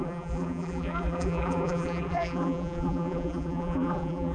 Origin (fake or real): fake